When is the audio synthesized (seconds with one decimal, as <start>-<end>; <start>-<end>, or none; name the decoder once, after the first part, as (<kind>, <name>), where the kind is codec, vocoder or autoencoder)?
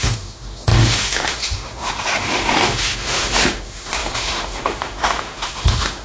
0.0-6.0 (autoencoder, DAC-VAE)